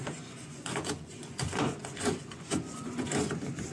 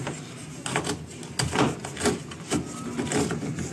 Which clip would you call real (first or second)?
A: second